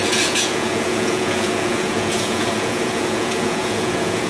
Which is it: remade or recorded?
remade